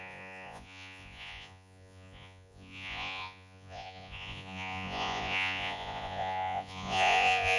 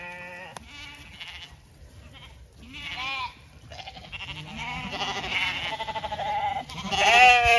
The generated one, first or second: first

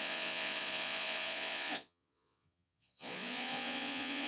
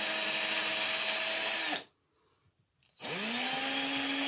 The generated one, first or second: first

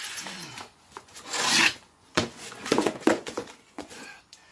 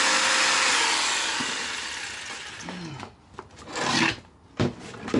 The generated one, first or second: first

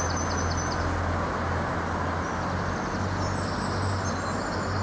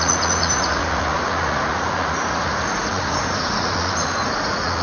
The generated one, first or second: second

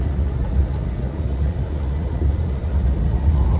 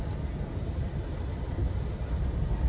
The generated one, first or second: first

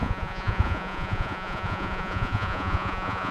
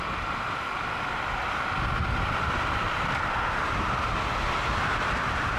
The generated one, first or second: first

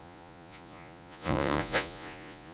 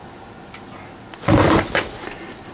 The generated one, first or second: first